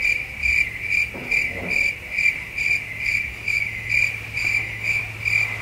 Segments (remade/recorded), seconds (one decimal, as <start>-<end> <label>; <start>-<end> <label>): 0.0-3.1 recorded; 3.1-3.9 remade; 3.9-4.4 recorded; 4.4-5.0 remade; 5.0-5.6 recorded